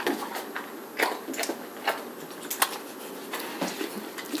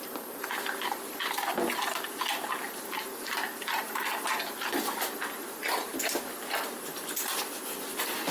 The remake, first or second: second